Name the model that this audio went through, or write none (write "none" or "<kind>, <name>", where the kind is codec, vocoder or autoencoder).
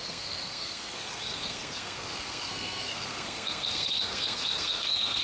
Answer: codec, SNAC